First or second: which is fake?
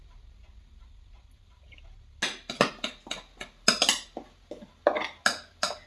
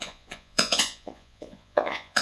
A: second